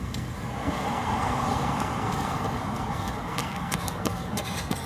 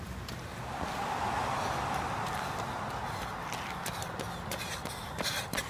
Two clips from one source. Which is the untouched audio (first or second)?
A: second